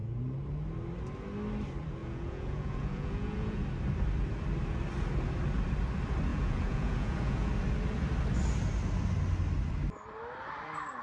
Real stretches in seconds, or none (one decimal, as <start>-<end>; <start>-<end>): 0.0-2.0; 3.6-6.3; 7.5-11.0